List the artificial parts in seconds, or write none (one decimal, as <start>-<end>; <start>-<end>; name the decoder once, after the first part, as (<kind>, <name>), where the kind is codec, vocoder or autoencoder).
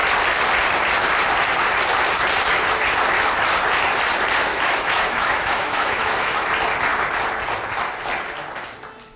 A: 4.5-6.5 (autoencoder, DAC-VAE)